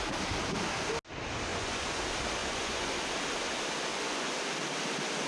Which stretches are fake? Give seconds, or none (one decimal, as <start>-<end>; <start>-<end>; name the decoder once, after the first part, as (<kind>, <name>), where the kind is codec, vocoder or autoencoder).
1.5-2.0 (vocoder, Vocos); 2.4-2.9; 3.9-4.4